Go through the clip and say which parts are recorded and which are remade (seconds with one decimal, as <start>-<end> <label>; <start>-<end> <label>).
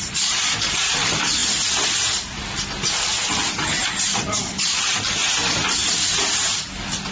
0.0-1.4 remade; 1.4-4.2 recorded; 4.2-5.2 remade; 5.2-7.1 recorded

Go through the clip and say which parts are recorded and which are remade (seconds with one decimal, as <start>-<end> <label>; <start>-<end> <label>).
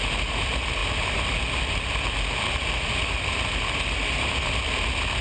0.0-0.8 recorded; 0.8-2.9 remade; 2.9-5.2 recorded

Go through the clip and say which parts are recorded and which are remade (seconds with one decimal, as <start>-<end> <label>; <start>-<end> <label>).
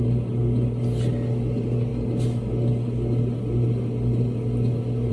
0.0-5.1 recorded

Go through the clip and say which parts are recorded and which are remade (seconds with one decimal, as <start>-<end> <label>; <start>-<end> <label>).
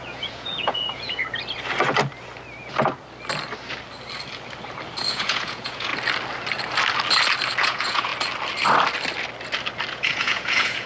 0.0-1.2 remade; 1.2-5.1 recorded; 5.1-5.9 remade; 5.9-7.6 recorded; 7.6-8.1 remade; 8.1-9.9 recorded; 9.9-10.9 remade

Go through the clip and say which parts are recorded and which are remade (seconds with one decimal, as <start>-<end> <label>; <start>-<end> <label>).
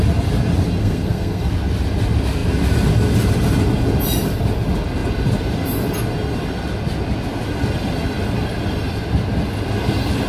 0.0-0.8 recorded; 0.8-1.5 remade; 1.5-10.3 recorded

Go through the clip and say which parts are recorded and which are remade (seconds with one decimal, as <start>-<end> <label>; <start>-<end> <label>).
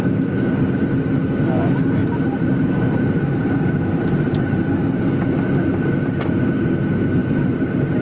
0.0-2.0 recorded; 2.0-2.8 remade; 2.8-8.0 recorded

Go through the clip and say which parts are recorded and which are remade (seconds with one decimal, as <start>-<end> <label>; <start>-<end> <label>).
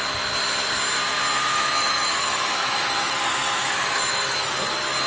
0.0-1.5 recorded; 1.5-4.6 remade; 4.6-5.1 recorded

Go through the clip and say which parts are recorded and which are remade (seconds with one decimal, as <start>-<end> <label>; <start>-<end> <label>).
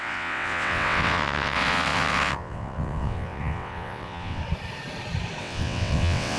0.0-4.4 remade; 4.4-5.4 recorded; 5.4-6.4 remade